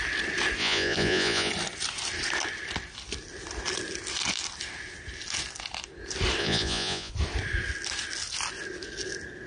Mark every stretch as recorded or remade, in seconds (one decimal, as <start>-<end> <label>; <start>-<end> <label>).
0.0-0.6 recorded; 0.6-1.5 remade; 1.5-6.4 recorded; 6.4-7.1 remade; 7.1-9.5 recorded

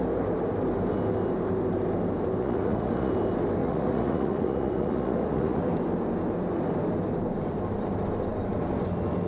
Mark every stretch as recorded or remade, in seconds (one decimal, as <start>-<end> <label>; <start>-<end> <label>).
0.0-2.4 recorded; 2.4-3.1 remade; 3.1-3.6 recorded; 3.6-5.6 remade; 5.6-9.3 recorded